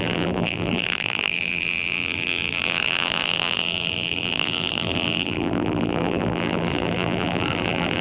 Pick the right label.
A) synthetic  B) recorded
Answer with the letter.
A